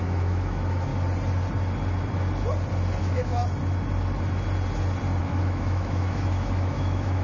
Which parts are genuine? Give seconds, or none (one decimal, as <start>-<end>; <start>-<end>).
0.9-3.0; 3.4-5.2